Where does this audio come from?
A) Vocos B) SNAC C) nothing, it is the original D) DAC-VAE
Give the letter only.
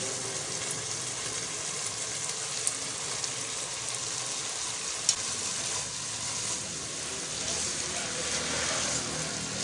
C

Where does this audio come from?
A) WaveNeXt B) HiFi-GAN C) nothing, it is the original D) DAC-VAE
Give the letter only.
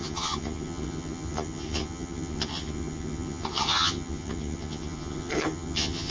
B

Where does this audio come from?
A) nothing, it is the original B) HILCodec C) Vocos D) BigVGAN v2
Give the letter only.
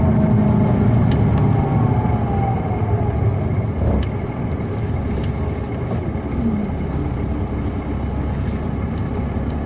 A